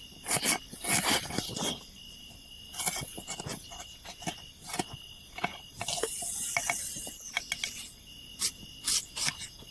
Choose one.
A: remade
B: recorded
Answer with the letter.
B